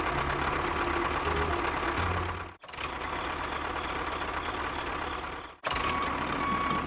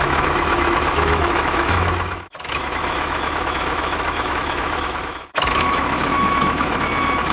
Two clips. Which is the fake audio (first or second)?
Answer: second